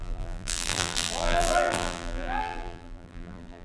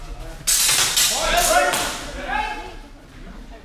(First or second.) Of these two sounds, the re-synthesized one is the first